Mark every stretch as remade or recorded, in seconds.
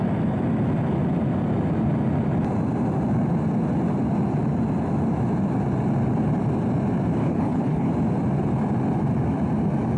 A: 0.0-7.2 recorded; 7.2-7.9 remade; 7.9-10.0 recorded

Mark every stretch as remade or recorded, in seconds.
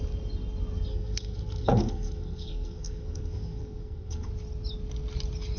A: 0.0-0.9 recorded; 0.9-4.3 remade; 4.3-5.6 recorded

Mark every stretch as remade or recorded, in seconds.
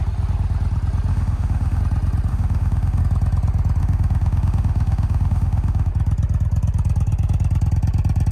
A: 0.0-1.1 recorded; 1.1-1.8 remade; 1.8-2.3 recorded; 2.3-3.0 remade; 3.0-3.8 recorded; 3.8-5.9 remade; 5.9-8.3 recorded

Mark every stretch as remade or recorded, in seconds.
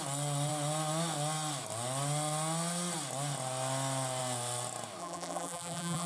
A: 0.0-5.0 recorded; 5.0-6.1 remade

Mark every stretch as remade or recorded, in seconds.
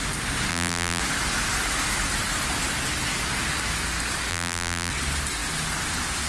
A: 0.0-0.5 recorded; 0.5-1.0 remade; 1.0-4.3 recorded; 4.3-4.9 remade; 4.9-6.3 recorded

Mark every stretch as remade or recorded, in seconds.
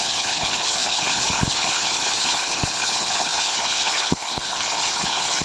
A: 0.0-5.4 remade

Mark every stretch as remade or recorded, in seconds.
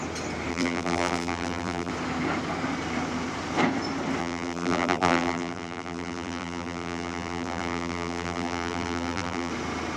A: 0.0-0.5 recorded; 0.5-1.9 remade; 1.9-4.2 recorded; 4.2-9.5 remade; 9.5-10.0 recorded